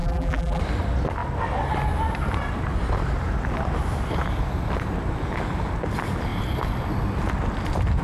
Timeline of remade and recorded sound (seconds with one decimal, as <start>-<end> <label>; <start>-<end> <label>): 0.0-0.6 remade; 0.6-8.0 recorded